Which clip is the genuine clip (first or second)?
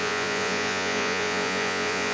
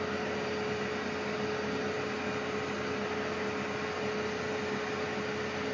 second